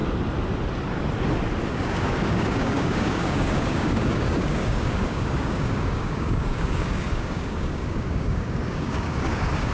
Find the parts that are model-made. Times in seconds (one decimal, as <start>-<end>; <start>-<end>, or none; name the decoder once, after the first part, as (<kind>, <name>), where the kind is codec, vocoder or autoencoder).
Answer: 1.7-9.7 (codec, DAC)